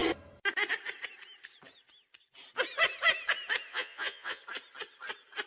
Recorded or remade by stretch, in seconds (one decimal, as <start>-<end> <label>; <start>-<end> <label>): 0.0-3.7 recorded; 3.7-4.4 remade; 4.4-5.5 recorded